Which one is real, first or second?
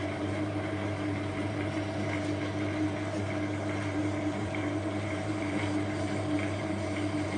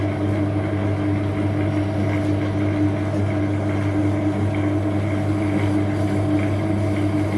second